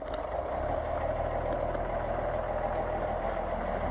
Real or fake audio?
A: real